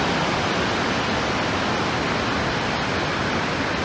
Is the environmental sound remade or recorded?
recorded